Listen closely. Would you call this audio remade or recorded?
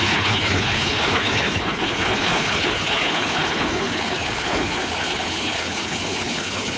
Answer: remade